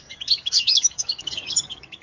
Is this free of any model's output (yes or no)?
no